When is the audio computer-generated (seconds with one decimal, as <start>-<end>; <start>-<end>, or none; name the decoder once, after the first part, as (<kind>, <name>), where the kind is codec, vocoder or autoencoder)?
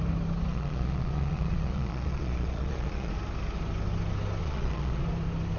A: 0.5-3.1 (vocoder, Vocos); 4.4-5.0